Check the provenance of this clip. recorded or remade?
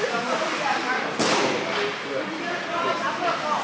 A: recorded